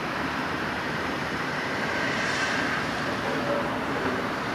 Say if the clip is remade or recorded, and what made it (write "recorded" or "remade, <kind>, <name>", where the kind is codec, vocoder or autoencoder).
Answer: remade, vocoder, BigVGAN v2